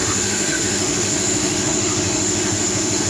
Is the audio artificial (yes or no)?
yes